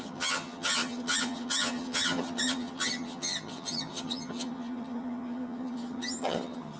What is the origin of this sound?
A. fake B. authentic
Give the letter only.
A